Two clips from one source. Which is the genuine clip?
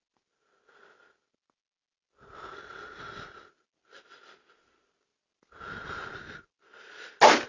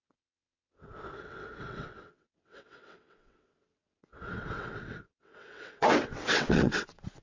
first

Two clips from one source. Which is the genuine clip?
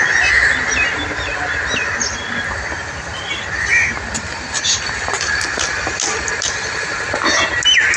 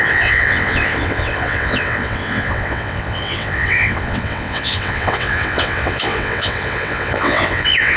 first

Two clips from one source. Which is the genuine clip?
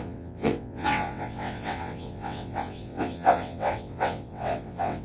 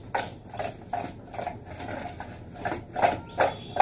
second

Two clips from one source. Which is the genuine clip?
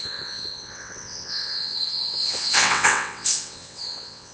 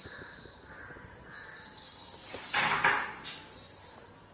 second